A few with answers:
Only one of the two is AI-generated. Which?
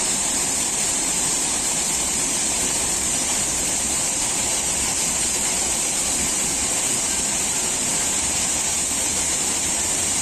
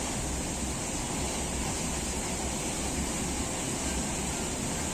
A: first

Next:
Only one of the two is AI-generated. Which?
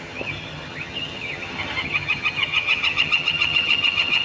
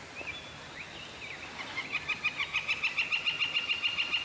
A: first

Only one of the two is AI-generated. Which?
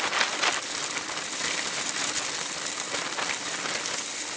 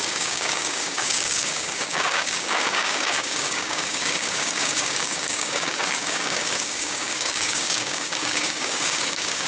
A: second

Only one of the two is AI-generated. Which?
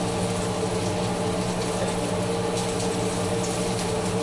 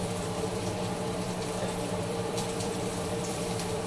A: second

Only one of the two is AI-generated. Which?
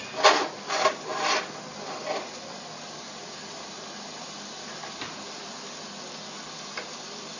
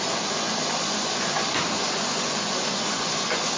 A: second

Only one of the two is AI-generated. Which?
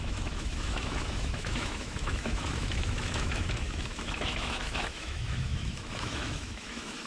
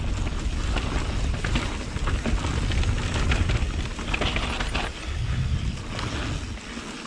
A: first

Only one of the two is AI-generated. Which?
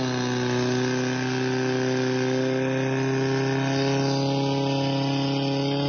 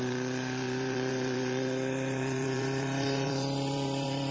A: second